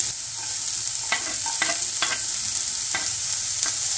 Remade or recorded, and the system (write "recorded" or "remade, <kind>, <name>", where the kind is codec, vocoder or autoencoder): recorded